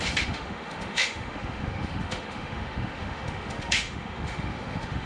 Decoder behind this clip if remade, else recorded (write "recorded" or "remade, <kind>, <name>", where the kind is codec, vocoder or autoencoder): remade, autoencoder, DAC-VAE